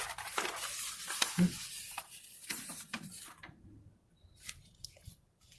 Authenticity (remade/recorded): recorded